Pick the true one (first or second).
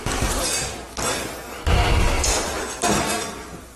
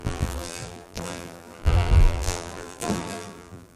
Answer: first